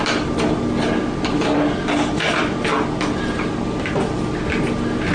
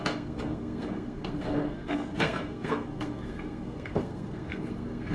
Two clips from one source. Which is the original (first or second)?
first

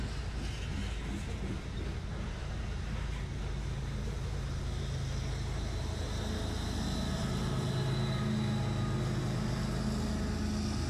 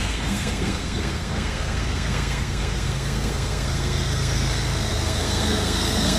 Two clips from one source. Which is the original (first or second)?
first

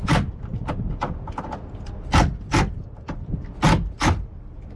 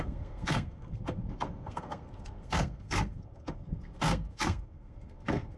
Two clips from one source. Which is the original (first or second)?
first